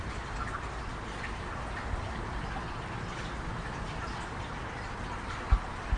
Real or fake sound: real